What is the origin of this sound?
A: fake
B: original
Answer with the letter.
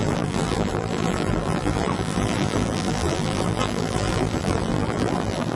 A